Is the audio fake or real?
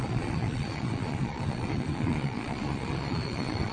fake